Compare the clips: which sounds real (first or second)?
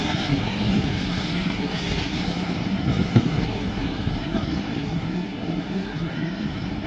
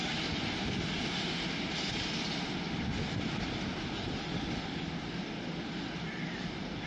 second